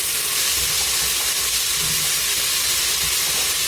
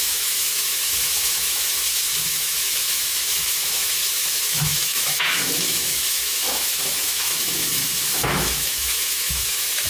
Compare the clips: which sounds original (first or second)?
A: first